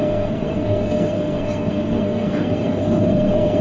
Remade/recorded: remade